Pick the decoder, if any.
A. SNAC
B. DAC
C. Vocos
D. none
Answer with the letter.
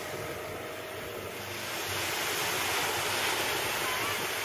D